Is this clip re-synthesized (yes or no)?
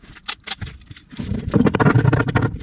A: no